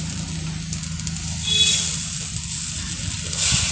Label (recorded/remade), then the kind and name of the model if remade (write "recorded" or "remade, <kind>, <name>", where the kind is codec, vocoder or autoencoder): recorded